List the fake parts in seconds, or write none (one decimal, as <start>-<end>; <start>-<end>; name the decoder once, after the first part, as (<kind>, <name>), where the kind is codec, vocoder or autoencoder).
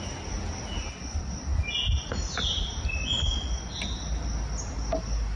none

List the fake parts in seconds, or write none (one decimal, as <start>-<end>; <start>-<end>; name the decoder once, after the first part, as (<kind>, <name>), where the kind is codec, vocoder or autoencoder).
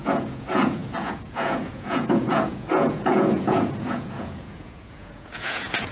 0.0-5.9 (vocoder, Vocos)